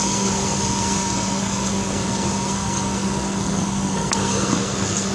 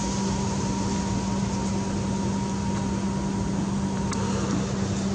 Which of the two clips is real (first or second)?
second